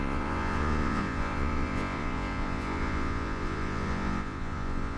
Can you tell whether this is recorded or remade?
remade